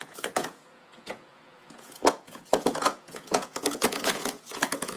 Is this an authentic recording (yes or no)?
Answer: no